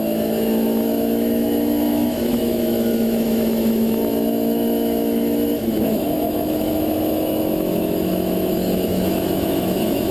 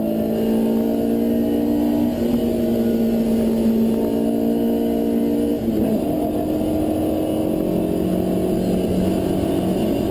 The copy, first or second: first